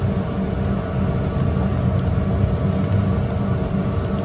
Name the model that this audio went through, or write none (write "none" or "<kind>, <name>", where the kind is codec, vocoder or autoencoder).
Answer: none